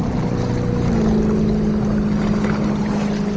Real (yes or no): yes